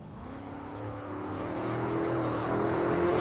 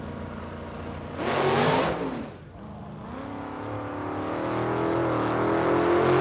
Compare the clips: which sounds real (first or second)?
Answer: second